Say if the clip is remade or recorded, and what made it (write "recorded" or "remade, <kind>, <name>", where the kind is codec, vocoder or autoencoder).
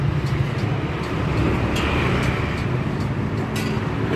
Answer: recorded